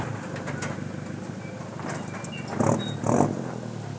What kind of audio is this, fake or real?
real